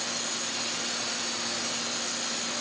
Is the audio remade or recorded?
recorded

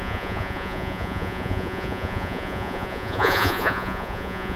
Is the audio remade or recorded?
remade